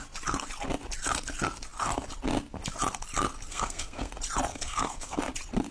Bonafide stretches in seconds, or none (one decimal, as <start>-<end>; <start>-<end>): 0.0-3.5; 4.1-4.5; 5.2-5.7